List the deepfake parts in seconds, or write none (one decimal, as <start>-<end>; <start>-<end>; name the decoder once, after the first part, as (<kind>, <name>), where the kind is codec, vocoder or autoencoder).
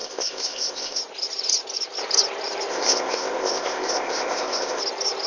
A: 0.0-1.0 (codec, ZipCodec); 2.7-4.8